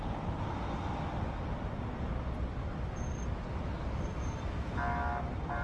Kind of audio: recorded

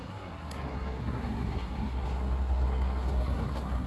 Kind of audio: remade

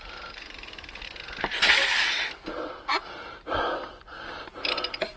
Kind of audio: recorded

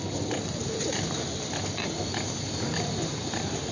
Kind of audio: recorded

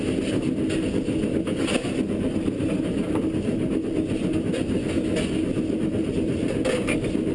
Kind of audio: recorded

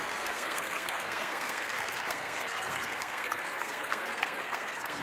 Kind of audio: remade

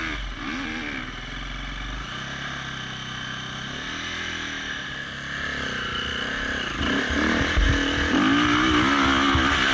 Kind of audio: recorded